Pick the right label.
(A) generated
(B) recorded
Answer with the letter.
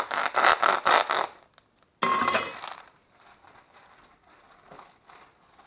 B